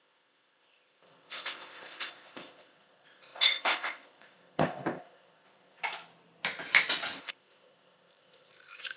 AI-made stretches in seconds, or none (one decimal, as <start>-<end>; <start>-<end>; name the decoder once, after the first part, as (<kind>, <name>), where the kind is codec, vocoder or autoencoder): 0.0-5.8 (codec, ZipCodec); 7.2-9.0